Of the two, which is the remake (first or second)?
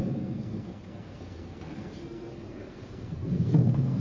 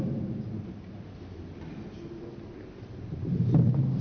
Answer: first